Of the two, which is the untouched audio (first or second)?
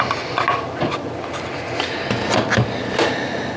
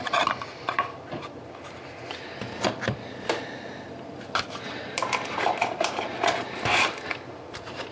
first